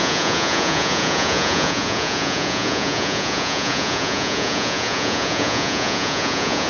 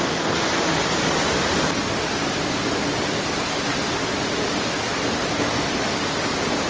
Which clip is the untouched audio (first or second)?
second